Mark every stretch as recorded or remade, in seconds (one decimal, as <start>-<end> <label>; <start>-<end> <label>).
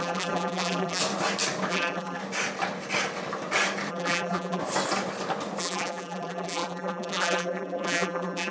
0.0-1.0 remade; 1.0-1.7 recorded; 1.7-2.2 remade; 2.2-3.9 recorded; 3.9-4.6 remade; 4.6-5.6 recorded; 5.6-8.5 remade